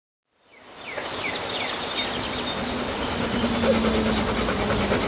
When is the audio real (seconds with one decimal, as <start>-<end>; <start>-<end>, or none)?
0.0-5.1